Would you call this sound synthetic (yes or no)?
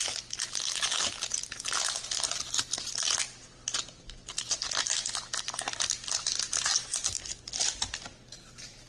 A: no